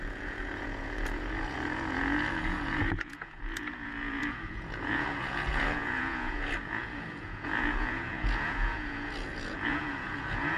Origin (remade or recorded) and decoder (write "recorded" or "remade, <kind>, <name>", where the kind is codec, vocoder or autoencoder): remade, vocoder, Vocos